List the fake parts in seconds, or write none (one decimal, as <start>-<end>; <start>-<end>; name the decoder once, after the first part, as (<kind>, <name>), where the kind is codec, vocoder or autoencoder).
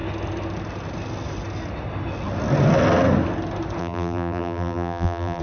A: 3.8-5.4 (vocoder, BigVGAN v2)